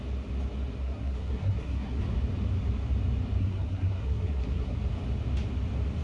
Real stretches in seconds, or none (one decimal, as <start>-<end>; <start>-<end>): 0.0-0.8; 2.0-3.4; 4.8-6.0